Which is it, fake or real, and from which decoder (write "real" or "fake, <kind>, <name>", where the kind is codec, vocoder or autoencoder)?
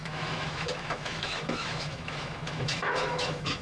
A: fake, autoencoder, DAC-VAE